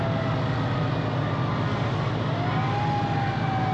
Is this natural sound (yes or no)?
yes